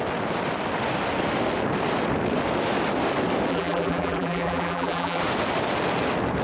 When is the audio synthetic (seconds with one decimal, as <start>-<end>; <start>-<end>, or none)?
3.5-5.2